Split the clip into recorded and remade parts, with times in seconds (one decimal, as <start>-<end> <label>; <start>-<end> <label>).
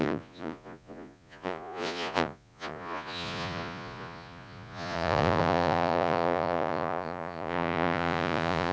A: 0.0-8.7 remade